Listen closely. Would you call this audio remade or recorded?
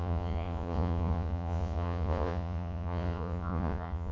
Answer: remade